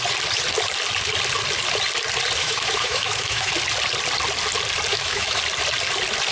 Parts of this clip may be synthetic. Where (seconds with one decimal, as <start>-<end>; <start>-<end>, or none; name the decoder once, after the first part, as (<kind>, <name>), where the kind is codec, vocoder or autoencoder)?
2.4-3.5 (autoencoder, DAC-VAE); 4.9-5.4